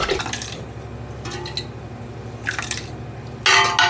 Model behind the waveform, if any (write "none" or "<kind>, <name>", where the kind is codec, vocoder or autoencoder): none